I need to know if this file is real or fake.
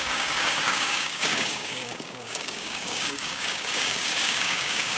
fake